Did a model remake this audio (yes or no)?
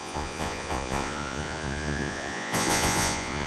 yes